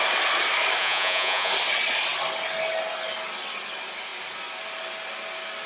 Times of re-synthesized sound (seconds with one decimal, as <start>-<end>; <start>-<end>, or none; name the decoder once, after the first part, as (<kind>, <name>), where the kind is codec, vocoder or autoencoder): 0.8-1.5 (vocoder, Vocos)